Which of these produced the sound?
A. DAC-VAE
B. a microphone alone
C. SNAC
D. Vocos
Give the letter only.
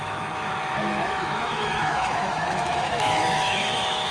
A